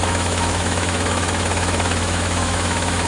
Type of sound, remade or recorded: remade